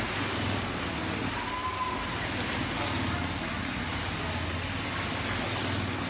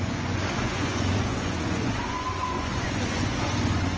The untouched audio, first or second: first